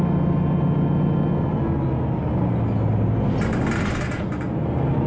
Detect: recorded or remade recorded